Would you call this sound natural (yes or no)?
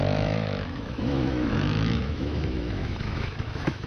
no